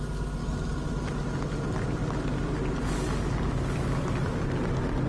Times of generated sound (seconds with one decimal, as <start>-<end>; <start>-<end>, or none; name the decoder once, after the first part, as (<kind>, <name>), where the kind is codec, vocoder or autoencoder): none